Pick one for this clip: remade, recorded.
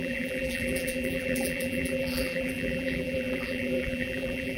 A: remade